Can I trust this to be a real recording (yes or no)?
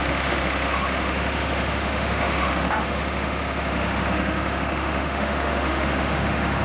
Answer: no